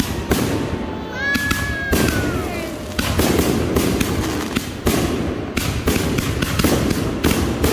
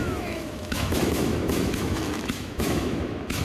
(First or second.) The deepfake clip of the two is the second